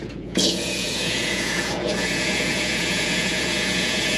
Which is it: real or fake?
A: fake